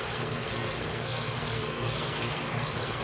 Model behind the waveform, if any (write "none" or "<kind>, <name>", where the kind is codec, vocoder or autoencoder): codec, SNAC